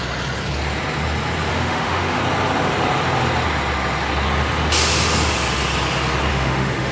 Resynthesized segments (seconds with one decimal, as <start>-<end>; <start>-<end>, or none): 1.5-2.2; 6.3-6.9